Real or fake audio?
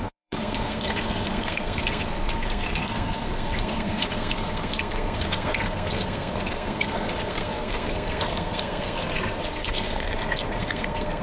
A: fake